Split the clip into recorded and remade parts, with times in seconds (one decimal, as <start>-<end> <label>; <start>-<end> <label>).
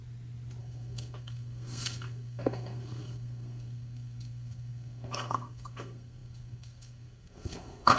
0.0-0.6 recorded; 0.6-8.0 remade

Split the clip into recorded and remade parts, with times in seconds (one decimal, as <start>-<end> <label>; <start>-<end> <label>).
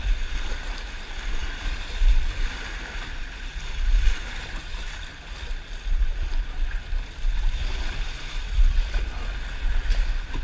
0.0-1.4 recorded; 1.4-3.2 remade; 3.2-4.7 recorded; 4.7-9.2 remade; 9.2-10.4 recorded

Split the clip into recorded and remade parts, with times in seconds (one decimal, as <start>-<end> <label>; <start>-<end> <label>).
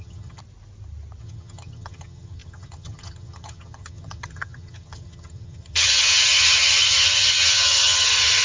0.0-0.4 remade; 0.4-1.2 recorded; 1.2-8.4 remade